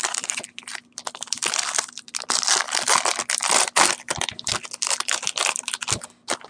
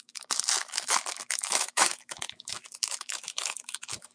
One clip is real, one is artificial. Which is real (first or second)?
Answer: first